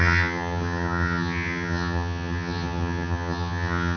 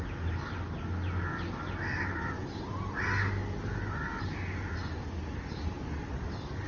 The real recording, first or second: second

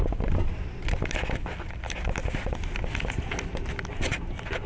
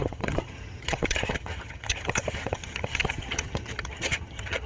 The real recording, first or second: first